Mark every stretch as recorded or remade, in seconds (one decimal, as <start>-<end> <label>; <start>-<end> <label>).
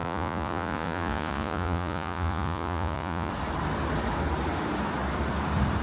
0.0-3.3 remade; 3.3-5.8 recorded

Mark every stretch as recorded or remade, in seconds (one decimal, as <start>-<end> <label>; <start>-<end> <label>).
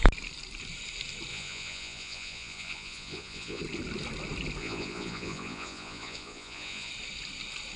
0.0-1.3 recorded; 1.3-3.6 remade; 3.6-4.6 recorded; 4.6-6.9 remade; 6.9-7.8 recorded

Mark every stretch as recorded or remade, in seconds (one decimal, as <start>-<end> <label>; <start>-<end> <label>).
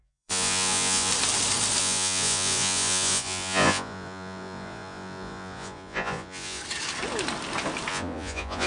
0.0-1.1 remade; 1.1-1.8 recorded; 1.8-6.6 remade; 6.6-7.9 recorded; 7.9-8.7 remade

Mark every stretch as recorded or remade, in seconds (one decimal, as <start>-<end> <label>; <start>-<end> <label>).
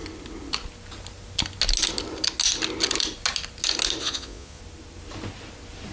0.0-4.0 recorded; 4.0-4.6 remade; 4.6-5.9 recorded